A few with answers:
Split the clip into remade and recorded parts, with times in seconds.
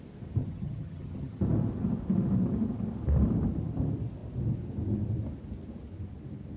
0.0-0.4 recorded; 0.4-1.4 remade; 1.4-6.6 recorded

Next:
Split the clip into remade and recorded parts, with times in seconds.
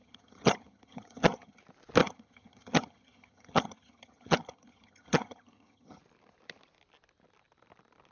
0.0-1.6 remade; 1.6-2.0 recorded; 2.0-6.0 remade; 6.0-8.1 recorded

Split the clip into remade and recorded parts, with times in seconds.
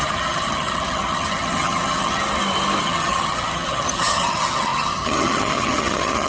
0.0-2.2 remade; 2.2-2.8 recorded; 2.8-6.3 remade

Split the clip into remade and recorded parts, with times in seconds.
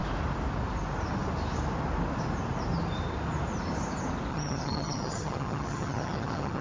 0.0-4.3 recorded; 4.3-6.6 remade